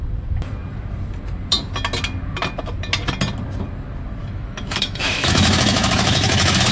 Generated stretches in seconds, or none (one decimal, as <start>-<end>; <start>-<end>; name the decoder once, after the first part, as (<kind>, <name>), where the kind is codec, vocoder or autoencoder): 4.2-6.7 (autoencoder, DAC-VAE)